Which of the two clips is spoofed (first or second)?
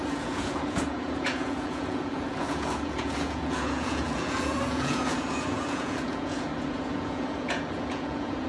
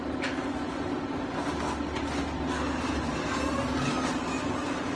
first